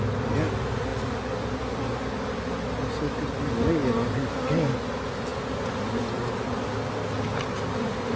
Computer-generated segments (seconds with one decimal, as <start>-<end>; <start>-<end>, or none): none